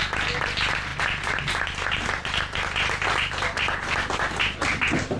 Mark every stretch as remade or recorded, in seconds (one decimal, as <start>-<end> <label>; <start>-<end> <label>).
0.0-0.9 recorded; 0.9-4.0 remade; 4.0-5.2 recorded

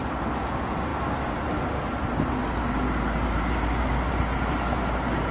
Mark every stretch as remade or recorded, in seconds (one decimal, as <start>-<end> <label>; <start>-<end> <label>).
0.0-5.3 recorded